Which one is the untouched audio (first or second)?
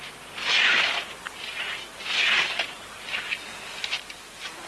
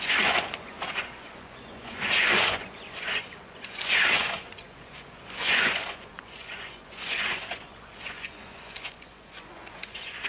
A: first